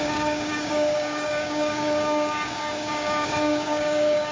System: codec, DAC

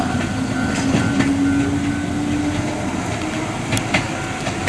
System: none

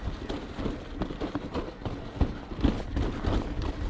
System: none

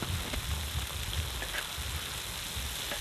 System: none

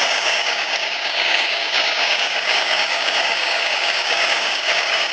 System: codec, DAC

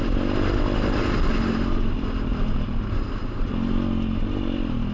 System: none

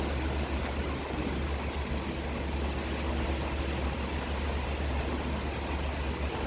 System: none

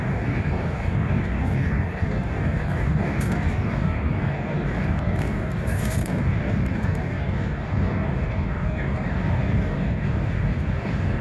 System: codec, DAC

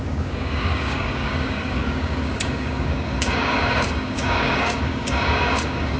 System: codec, DAC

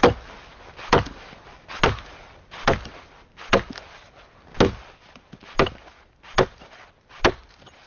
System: none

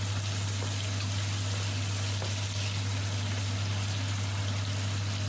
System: none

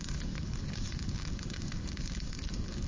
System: codec, DAC